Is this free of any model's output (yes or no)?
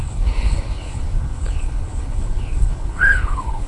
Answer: no